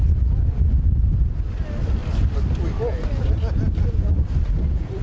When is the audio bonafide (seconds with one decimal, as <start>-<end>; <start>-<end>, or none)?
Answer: 0.0-5.0